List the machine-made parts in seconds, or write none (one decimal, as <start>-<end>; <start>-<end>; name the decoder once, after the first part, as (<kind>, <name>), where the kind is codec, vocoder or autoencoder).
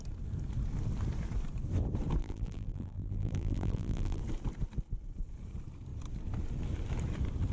2.2-4.2 (vocoder, BigVGAN v2)